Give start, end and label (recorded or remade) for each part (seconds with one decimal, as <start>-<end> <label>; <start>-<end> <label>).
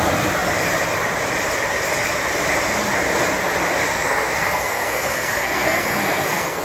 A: 0.0-3.9 recorded; 3.9-6.6 remade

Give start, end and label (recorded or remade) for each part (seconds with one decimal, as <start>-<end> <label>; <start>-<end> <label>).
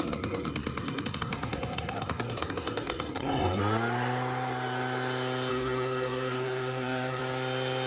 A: 0.0-3.6 remade; 3.6-5.5 recorded; 5.5-7.2 remade; 7.2-7.9 recorded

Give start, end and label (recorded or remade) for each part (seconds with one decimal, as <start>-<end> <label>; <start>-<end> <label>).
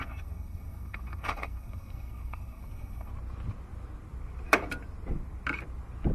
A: 0.0-3.1 remade; 3.1-6.1 recorded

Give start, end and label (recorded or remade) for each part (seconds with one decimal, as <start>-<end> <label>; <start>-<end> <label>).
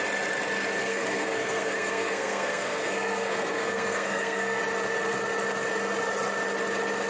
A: 0.0-0.8 recorded; 0.8-4.6 remade; 4.6-7.1 recorded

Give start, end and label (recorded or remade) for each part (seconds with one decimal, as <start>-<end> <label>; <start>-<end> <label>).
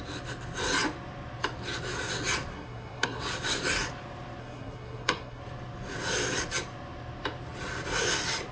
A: 0.0-2.5 recorded; 2.5-3.2 remade; 3.2-4.4 recorded; 4.4-5.4 remade; 5.4-8.5 recorded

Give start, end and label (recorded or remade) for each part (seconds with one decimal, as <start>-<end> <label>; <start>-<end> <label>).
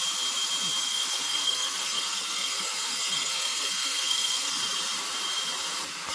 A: 0.0-0.8 recorded; 0.8-4.5 remade; 4.5-6.1 recorded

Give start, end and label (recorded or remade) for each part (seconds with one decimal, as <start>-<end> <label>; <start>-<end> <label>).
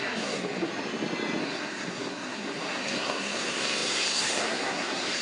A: 0.0-0.7 remade; 0.7-1.4 recorded; 1.4-5.2 remade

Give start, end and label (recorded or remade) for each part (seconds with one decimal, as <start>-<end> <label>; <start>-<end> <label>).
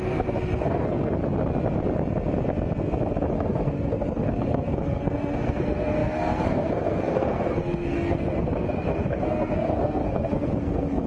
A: 0.0-1.2 remade; 1.2-3.3 recorded; 3.3-11.1 remade